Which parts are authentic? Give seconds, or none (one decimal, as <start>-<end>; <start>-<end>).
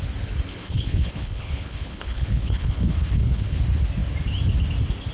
0.0-0.5; 3.6-5.1